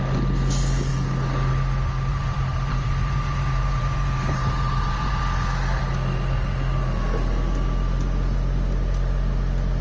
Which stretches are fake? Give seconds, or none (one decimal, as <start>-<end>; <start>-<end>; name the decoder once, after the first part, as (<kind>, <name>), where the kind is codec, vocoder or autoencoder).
2.1-5.2 (vocoder, BigVGAN v2)